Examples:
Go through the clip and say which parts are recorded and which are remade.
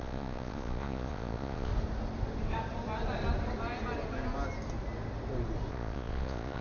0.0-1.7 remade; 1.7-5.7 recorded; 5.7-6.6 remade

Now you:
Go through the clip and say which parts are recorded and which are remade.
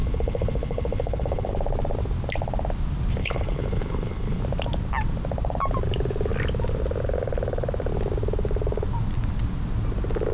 0.0-1.5 remade; 1.5-3.2 recorded; 3.2-4.4 remade; 4.4-10.3 recorded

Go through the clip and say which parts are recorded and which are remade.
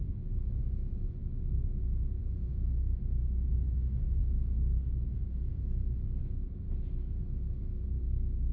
0.0-2.2 recorded; 2.2-3.0 remade; 3.0-8.5 recorded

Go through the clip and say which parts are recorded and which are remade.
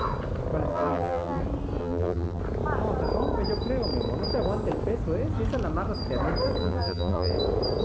0.0-0.7 recorded; 0.7-1.4 remade; 1.4-1.8 recorded; 1.8-2.4 remade; 2.4-6.6 recorded; 6.6-7.3 remade; 7.3-7.8 recorded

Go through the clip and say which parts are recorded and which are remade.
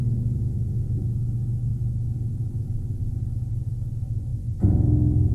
0.0-5.3 recorded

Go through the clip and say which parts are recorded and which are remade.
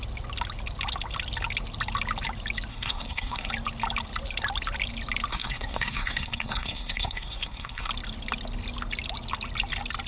0.0-2.7 recorded; 2.7-3.5 remade; 3.5-5.3 recorded; 5.3-7.9 remade; 7.9-10.1 recorded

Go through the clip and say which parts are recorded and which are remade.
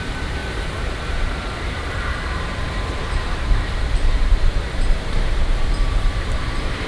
0.0-6.9 remade